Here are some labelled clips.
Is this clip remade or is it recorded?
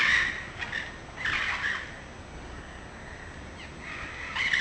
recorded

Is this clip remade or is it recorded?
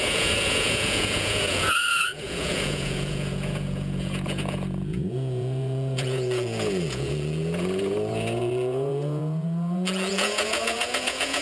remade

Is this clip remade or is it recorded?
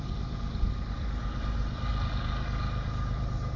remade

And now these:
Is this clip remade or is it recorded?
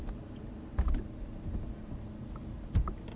recorded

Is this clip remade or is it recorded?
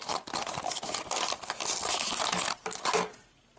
recorded